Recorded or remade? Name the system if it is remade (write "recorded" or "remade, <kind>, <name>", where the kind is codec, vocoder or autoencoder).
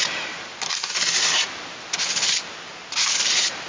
recorded